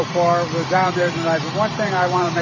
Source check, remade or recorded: remade